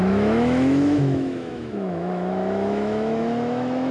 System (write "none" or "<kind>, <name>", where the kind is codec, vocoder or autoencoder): autoencoder, DAC-VAE